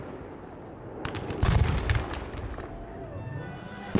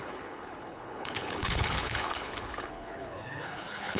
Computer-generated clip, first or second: second